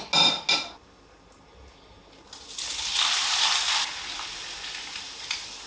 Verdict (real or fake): real